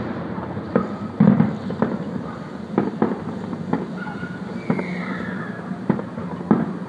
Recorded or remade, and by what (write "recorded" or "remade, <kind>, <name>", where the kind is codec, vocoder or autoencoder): remade, vocoder, BigVGAN v2